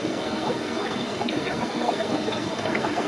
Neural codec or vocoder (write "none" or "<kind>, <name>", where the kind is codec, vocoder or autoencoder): codec, SNAC